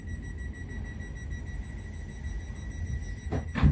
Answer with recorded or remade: recorded